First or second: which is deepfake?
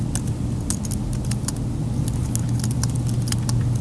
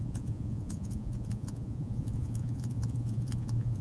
second